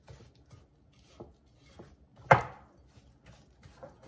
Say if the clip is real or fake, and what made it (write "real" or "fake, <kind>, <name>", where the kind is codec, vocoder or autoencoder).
real